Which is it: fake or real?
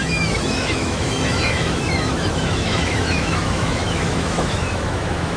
fake